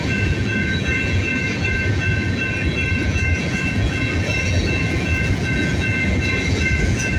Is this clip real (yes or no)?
no